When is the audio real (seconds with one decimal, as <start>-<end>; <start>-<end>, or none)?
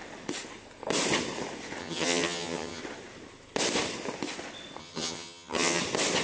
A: 0.0-1.8; 2.8-4.8; 5.8-6.2